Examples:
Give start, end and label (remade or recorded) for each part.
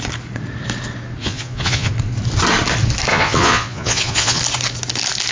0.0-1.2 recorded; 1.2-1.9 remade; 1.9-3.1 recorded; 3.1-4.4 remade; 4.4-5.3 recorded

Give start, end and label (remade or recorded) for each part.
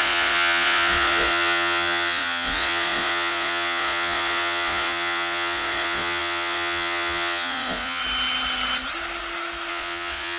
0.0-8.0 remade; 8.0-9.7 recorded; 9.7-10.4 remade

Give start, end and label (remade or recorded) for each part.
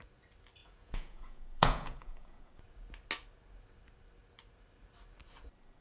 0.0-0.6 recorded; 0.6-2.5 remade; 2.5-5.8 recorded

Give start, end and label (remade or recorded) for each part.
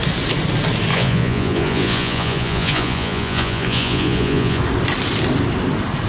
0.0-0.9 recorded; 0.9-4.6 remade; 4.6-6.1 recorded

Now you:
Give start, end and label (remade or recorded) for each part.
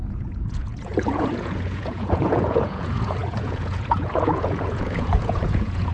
0.0-5.9 remade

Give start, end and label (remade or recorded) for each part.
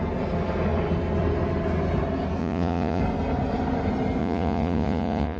0.0-2.4 recorded; 2.4-3.0 remade; 3.0-4.2 recorded; 4.2-5.4 remade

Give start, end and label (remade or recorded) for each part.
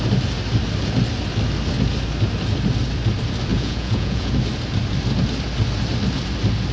0.0-3.5 recorded; 3.5-4.3 remade; 4.3-6.7 recorded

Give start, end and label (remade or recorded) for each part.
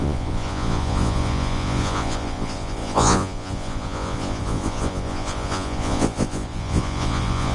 0.0-7.5 remade